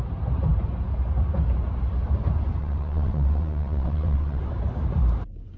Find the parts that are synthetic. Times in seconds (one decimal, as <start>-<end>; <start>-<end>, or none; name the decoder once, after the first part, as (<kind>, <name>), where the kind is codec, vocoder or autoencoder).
2.6-4.4 (vocoder, WaveNeXt)